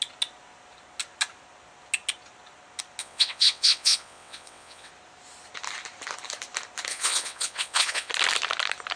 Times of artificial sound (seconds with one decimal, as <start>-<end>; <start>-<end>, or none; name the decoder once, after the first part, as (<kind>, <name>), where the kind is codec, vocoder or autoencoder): 3.0-4.9 (vocoder, WaveNeXt); 6.9-8.1